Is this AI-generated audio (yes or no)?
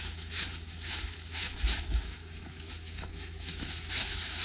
yes